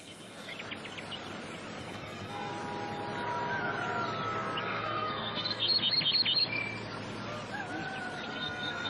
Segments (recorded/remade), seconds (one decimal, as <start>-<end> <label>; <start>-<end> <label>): 0.0-0.5 remade; 0.5-1.8 recorded; 1.8-2.5 remade; 2.5-4.6 recorded; 4.6-5.7 remade; 5.7-8.3 recorded; 8.3-8.9 remade